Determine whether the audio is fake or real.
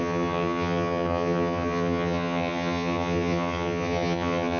fake